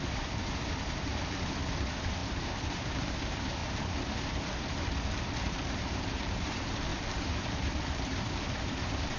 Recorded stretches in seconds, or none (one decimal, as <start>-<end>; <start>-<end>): 3.6-5.5